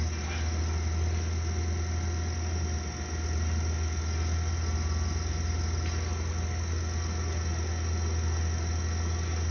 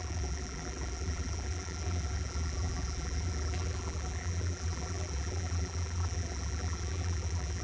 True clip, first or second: first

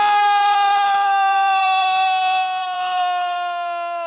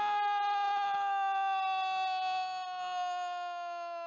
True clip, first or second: second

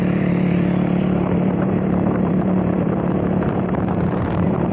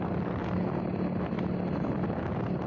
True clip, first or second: second